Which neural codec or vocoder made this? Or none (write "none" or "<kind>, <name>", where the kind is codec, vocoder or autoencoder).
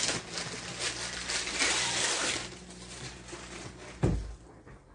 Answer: none